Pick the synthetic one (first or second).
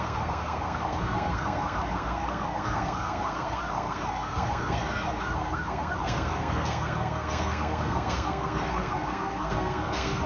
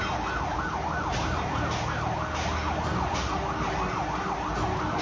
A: first